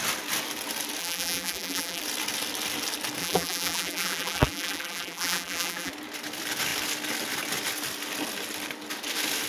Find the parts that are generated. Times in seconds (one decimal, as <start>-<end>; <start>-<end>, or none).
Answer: 1.0-2.0; 3.2-5.9